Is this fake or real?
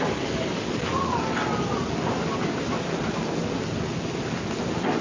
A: real